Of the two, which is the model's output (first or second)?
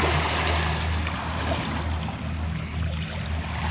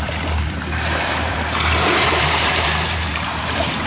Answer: second